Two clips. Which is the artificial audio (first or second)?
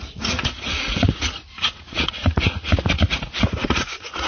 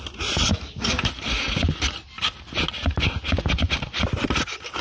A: first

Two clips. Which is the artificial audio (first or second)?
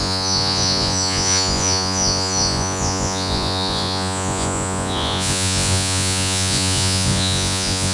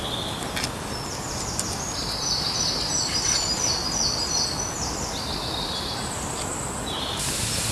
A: first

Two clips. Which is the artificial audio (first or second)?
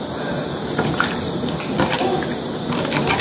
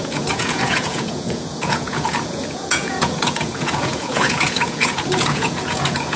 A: second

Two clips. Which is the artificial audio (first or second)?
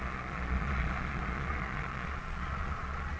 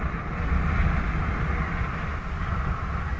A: first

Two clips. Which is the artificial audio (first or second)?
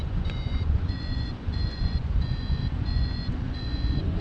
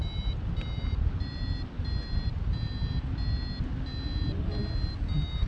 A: first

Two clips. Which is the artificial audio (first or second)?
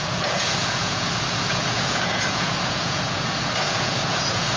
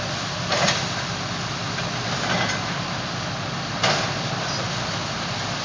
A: first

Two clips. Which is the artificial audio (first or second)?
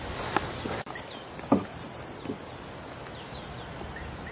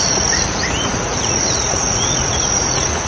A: second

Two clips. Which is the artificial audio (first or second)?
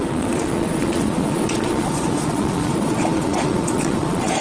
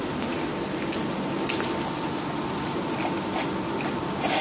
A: first